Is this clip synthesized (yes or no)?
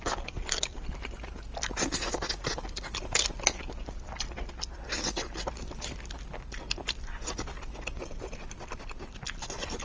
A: no